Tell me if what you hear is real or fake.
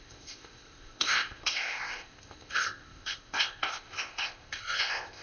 fake